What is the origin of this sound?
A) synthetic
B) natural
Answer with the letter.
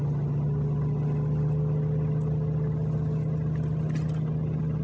B